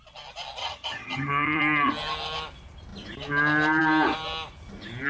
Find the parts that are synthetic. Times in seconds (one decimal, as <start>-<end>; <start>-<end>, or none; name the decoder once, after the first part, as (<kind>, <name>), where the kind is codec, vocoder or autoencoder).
0.6-1.6 (vocoder, HiFi-GAN)